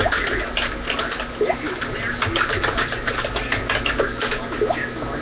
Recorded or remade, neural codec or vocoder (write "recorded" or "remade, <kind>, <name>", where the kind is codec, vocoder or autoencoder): recorded